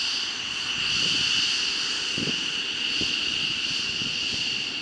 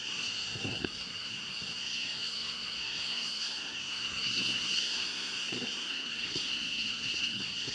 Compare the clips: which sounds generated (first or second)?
second